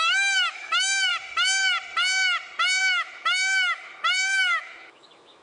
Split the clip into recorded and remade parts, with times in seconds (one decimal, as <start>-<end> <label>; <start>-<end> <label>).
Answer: 0.0-1.1 remade; 1.1-2.8 recorded; 2.8-5.4 remade